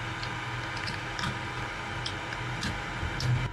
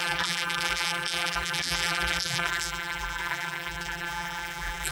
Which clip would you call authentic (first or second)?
first